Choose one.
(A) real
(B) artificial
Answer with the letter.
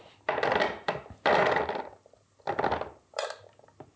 B